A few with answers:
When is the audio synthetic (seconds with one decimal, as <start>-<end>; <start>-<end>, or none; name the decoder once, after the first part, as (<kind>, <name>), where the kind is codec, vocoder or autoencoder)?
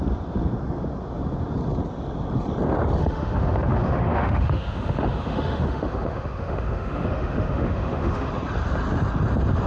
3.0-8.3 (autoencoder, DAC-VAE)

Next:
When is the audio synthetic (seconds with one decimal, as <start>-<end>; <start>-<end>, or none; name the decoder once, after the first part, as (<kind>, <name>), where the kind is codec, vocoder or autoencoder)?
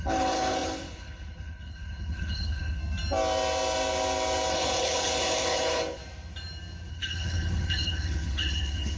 0.0-2.8 (codec, HILCodec); 4.5-6.0; 6.9-9.0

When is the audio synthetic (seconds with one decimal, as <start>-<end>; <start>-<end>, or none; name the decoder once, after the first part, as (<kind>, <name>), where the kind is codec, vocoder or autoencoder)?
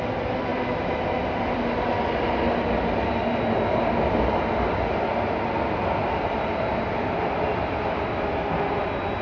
none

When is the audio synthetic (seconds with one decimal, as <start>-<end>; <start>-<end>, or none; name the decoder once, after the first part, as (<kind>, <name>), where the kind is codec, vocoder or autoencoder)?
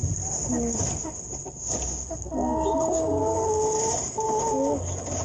none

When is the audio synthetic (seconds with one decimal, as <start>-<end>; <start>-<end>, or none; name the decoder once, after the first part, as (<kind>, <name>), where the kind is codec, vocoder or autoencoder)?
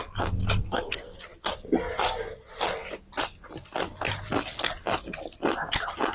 0.6-1.2 (codec, SNAC)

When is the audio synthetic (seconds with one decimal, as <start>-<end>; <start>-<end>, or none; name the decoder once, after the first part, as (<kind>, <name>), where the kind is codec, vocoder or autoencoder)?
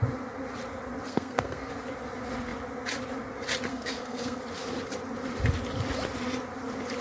1.1-1.7 (codec, SNAC); 3.7-4.4